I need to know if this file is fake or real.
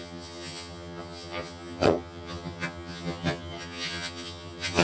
fake